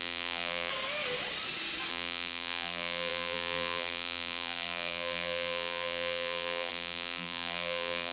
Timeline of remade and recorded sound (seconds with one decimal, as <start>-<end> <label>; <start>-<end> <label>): 0.0-0.7 remade; 0.7-1.9 recorded; 1.9-8.1 remade